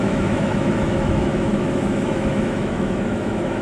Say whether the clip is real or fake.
fake